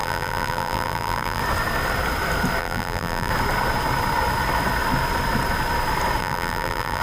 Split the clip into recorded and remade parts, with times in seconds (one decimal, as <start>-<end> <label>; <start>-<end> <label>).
0.0-1.4 remade; 1.4-2.6 recorded; 2.6-3.3 remade; 3.3-6.2 recorded; 6.2-7.0 remade